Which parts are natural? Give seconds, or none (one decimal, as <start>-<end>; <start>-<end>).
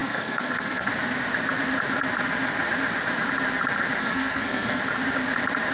0.9-4.0; 4.8-5.7